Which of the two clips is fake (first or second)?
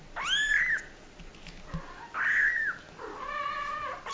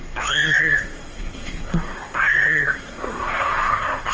second